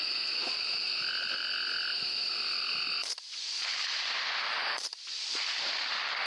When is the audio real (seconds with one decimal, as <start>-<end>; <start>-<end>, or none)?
0.0-3.0; 5.6-6.3